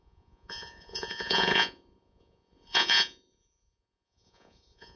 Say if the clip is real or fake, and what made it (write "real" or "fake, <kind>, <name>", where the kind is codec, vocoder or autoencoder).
fake, vocoder, Vocos